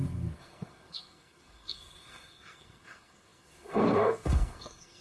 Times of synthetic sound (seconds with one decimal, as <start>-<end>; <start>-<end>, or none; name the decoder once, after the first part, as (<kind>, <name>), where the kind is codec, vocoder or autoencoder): 0.0-5.0 (codec, SNAC)

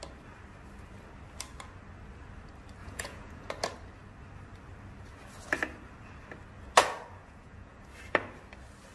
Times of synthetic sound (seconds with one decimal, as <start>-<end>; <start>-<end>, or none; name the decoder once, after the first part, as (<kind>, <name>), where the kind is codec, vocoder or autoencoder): 2.8-3.5 (vocoder, Vocos); 7.2-7.8

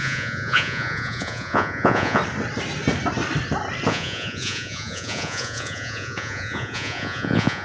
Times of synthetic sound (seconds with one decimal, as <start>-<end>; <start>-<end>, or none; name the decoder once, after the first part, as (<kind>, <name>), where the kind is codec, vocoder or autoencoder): 0.0-2.2 (vocoder, Vocos); 3.9-7.6

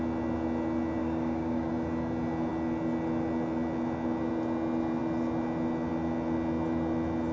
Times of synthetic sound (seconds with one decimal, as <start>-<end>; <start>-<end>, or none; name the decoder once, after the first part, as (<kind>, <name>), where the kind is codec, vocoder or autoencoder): 1.0-1.7 (codec, DAC)

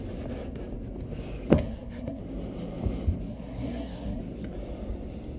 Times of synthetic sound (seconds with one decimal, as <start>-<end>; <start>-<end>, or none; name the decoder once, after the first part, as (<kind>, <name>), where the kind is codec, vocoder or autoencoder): 1.5-2.2 (codec, SNAC); 3.3-4.2